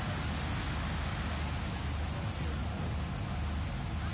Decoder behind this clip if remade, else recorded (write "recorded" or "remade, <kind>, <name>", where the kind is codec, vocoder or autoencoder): recorded